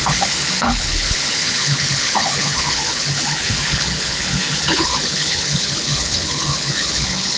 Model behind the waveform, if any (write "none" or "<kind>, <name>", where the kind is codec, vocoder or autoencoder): codec, HILCodec